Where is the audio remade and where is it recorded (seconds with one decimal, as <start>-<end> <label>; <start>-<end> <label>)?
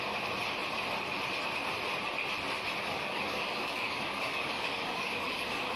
0.0-2.8 recorded; 2.8-5.8 remade